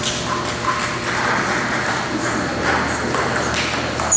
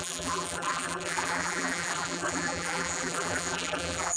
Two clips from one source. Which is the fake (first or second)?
second